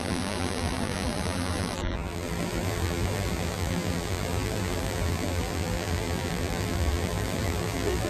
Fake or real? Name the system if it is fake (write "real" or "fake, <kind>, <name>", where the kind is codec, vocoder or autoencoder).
fake, vocoder, BigVGAN v2